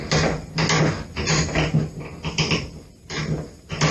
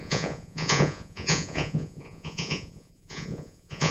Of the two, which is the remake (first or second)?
second